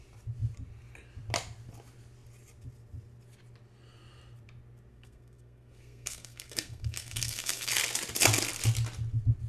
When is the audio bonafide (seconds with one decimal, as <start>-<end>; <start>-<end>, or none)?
0.0-4.9; 7.7-9.5